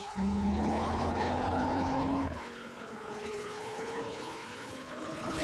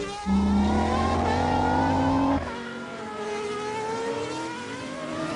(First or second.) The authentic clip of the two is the second